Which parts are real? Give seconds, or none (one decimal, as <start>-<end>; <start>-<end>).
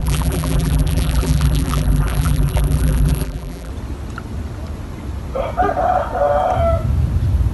3.7-7.5